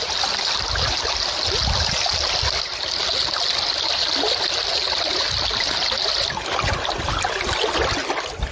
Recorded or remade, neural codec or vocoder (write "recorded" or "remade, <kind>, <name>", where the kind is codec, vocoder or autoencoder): recorded